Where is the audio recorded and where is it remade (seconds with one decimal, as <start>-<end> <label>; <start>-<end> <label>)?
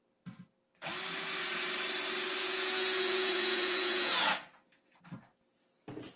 0.0-2.4 recorded; 2.4-5.0 remade; 5.0-6.2 recorded